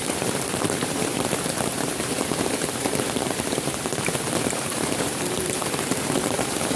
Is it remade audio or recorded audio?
remade